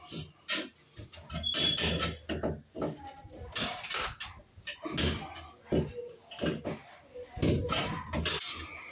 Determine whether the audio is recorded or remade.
recorded